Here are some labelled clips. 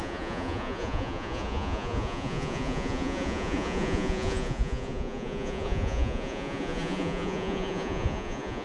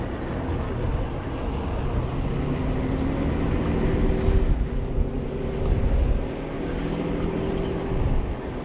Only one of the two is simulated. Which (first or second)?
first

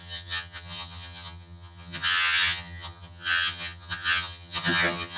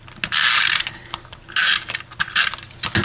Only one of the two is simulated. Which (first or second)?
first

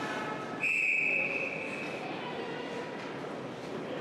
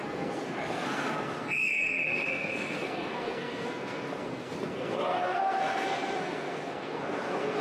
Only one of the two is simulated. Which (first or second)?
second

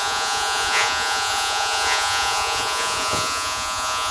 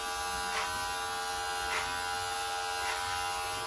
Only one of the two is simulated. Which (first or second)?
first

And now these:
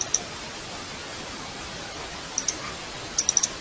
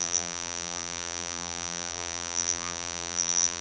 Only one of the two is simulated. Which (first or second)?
second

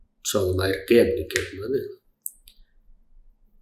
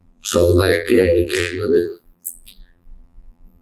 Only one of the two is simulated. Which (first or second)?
second